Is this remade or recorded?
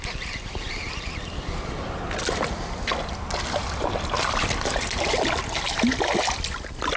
recorded